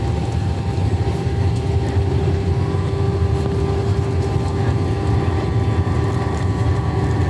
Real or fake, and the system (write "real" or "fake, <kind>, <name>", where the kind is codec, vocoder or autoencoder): real